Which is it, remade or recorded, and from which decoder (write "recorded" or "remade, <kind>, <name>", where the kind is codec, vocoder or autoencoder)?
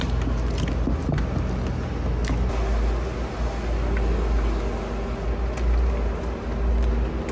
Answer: recorded